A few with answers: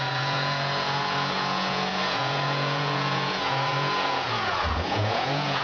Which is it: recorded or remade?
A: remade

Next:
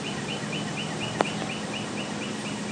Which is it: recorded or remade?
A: recorded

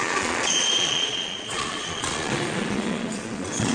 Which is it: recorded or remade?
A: remade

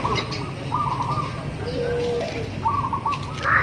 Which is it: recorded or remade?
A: recorded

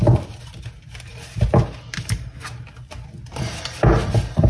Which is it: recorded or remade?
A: recorded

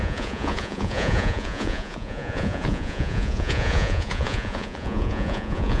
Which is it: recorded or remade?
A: remade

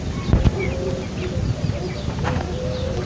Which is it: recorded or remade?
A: recorded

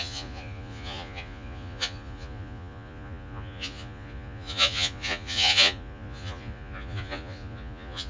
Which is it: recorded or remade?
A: remade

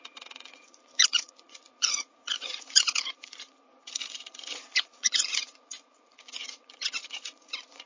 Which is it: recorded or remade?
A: remade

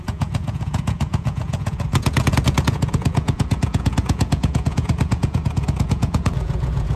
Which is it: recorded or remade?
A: remade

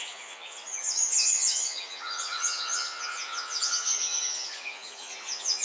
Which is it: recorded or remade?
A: remade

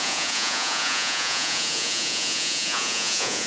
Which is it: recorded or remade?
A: remade